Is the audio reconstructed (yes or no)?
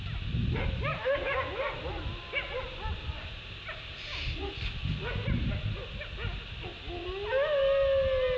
no